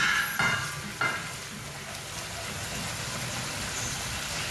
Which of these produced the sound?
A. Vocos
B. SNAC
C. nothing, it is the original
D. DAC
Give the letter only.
C